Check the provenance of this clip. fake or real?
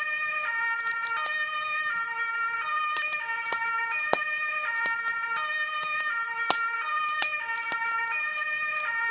real